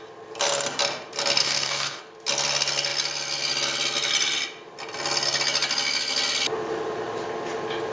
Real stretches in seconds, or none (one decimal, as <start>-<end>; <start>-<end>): 0.0-1.4; 2.0-7.9